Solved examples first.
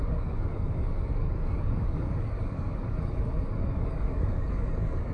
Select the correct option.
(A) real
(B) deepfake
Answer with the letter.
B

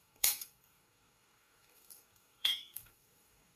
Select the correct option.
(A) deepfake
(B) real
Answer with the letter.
A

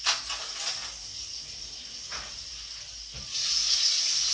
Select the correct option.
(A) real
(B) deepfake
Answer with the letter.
A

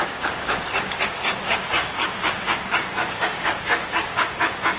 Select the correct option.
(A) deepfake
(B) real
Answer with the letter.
A